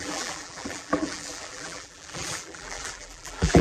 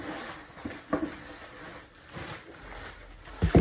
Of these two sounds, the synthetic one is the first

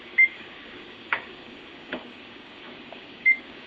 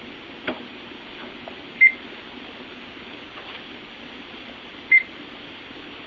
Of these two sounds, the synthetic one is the first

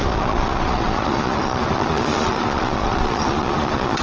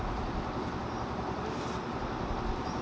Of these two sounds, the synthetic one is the first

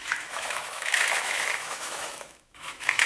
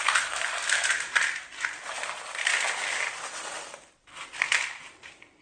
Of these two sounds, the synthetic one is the first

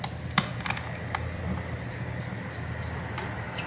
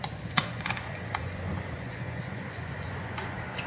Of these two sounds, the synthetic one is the second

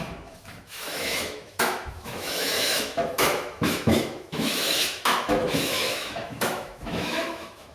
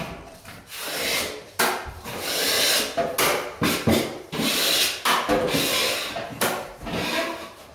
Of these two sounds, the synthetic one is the first